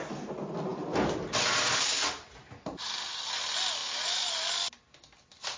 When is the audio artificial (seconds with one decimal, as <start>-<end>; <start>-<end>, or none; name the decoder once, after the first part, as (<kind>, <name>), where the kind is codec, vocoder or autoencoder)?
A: none